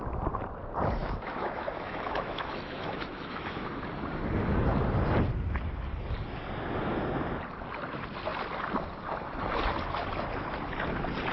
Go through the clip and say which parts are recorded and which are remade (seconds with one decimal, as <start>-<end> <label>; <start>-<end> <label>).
0.0-1.0 recorded; 1.0-3.7 remade; 3.7-11.3 recorded